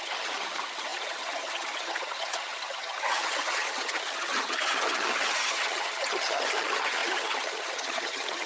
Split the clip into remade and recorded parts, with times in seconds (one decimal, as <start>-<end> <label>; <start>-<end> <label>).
0.0-8.5 remade